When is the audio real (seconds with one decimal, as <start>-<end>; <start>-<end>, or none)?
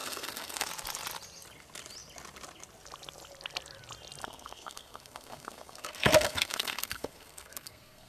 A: 0.7-4.2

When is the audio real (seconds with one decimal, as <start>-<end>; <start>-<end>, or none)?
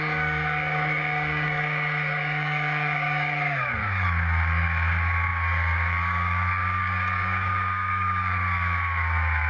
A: none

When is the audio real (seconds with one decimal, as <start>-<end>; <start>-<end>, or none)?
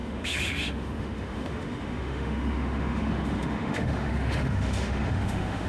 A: none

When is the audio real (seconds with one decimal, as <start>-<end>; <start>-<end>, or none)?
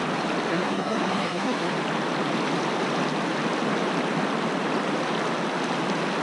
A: 0.0-0.5; 1.7-6.2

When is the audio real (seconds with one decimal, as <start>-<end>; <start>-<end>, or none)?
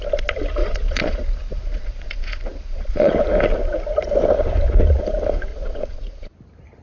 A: 0.0-0.6; 3.1-5.5; 6.3-6.8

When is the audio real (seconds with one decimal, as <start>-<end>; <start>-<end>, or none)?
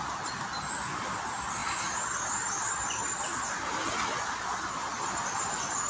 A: 0.0-5.9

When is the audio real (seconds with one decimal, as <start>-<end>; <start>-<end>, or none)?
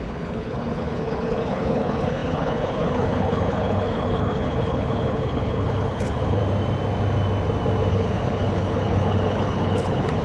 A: 6.4-7.9